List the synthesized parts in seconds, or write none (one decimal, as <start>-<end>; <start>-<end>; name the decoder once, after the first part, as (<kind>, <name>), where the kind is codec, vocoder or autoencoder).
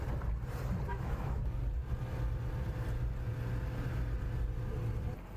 0.9-1.4 (autoencoder, DAC-VAE)